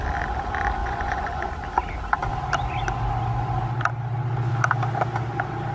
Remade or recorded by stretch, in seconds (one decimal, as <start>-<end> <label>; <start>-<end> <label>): 0.0-0.8 recorded; 0.8-1.5 remade; 1.5-5.7 recorded